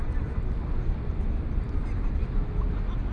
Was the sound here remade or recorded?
recorded